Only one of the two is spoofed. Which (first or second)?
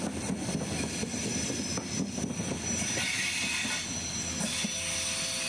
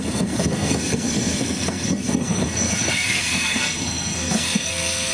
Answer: second